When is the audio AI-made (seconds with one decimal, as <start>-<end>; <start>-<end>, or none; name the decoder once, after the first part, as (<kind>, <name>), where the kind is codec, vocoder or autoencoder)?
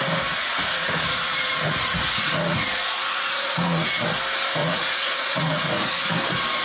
0.4-3.9 (vocoder, Vocos); 4.6-6.1